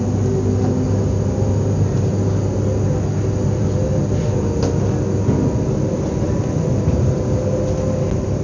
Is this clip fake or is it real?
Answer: real